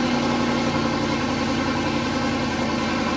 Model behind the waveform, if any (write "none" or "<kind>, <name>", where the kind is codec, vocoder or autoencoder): none